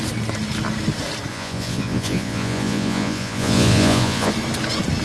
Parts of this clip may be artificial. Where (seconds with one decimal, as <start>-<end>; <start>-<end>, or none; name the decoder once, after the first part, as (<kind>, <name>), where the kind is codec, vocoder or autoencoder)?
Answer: 1.3-4.3 (vocoder, Vocos)